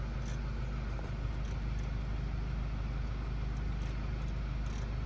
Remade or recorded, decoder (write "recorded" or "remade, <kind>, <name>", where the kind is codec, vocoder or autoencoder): recorded